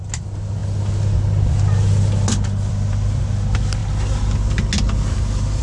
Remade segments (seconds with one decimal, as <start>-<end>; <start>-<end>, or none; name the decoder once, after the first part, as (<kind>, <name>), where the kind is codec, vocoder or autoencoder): none